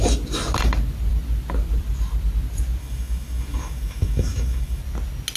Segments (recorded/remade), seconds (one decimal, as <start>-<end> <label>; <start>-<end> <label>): 0.0-2.8 recorded; 2.8-4.8 remade; 4.8-5.4 recorded